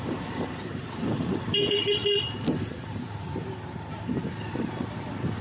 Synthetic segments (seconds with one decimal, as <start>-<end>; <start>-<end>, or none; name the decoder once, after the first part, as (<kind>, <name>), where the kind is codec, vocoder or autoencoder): 0.0-2.0 (vocoder, BigVGAN v2)